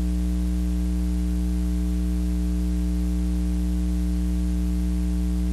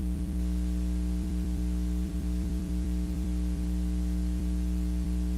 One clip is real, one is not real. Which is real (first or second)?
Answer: first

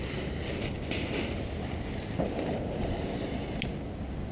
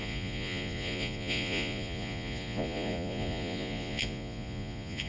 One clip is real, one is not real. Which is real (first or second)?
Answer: first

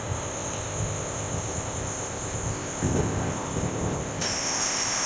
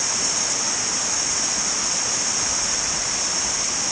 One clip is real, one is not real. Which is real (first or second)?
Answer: second